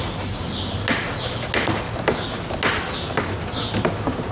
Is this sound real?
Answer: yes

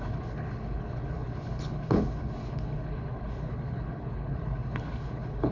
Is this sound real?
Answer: no